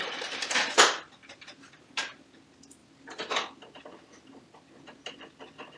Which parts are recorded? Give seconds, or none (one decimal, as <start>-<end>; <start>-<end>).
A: 0.0-5.8